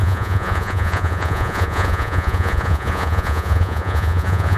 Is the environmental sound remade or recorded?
remade